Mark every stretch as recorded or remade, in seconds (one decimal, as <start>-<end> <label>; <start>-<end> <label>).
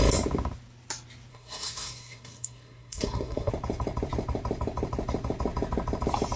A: 0.0-1.3 recorded; 1.3-3.5 remade; 3.5-6.4 recorded